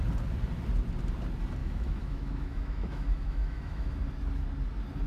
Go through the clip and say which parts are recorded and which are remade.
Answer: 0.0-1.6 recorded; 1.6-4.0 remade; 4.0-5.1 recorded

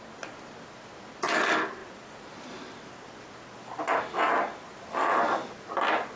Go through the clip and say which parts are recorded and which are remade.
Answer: 0.0-6.2 recorded

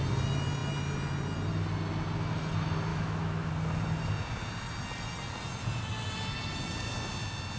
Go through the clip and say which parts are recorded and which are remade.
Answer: 0.0-2.9 recorded; 2.9-3.5 remade; 3.5-7.6 recorded

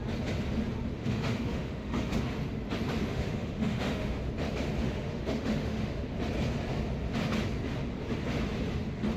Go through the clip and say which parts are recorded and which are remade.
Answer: 0.0-1.0 recorded; 1.0-2.2 remade; 2.2-3.1 recorded; 3.1-4.3 remade; 4.3-4.8 recorded; 4.8-6.0 remade; 6.0-9.2 recorded

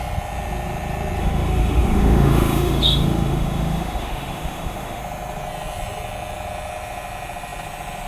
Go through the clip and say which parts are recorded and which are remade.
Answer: 0.0-1.2 recorded; 1.2-5.0 remade; 5.0-8.1 recorded

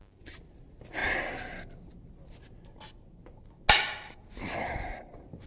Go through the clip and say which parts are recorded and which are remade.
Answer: 0.0-5.5 recorded

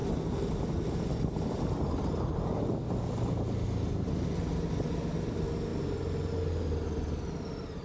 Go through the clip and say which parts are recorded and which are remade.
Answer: 0.0-7.8 recorded